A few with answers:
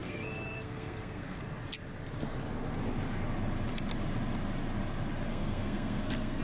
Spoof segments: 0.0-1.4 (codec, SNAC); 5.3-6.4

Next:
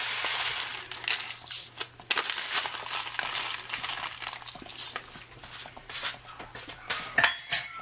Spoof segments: none

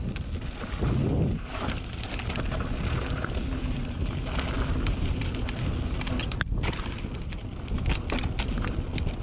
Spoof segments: none

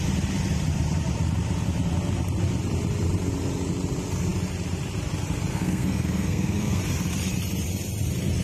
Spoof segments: 5.5-6.8 (codec, SNAC)

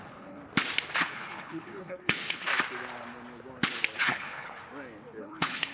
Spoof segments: 0.0-0.4 (codec, HILCodec); 1.0-2.5; 4.0-4.6; 5.2-5.7

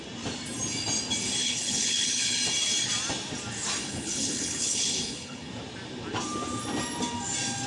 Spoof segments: 1.4-2.4 (codec, HILCodec); 3.8-5.5

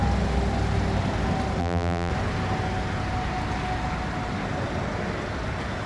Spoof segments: 1.6-2.1 (vocoder, BigVGAN v2)